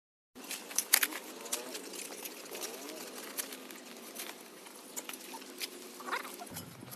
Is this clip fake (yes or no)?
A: no